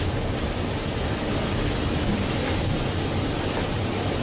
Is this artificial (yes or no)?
no